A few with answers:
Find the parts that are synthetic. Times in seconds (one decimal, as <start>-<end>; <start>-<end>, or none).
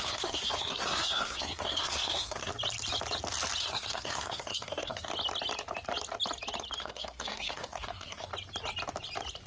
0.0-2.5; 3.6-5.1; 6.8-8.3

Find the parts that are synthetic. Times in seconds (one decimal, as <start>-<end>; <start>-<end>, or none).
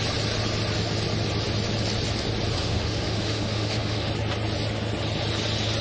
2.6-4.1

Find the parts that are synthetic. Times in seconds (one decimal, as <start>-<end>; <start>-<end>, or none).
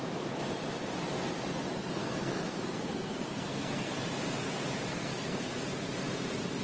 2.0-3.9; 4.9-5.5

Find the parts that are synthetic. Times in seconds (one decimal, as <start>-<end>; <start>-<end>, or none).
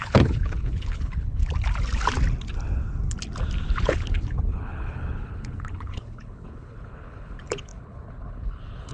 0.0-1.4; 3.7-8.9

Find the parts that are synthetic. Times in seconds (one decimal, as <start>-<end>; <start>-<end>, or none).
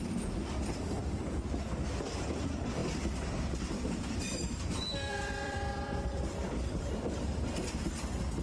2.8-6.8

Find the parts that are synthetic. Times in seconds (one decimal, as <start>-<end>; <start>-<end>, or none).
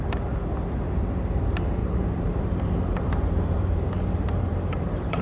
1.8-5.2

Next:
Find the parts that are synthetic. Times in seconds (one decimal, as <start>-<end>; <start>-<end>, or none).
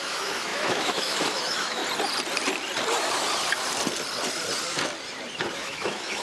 0.0-1.8; 5.5-6.2